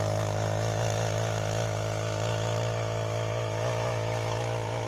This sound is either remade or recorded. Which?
remade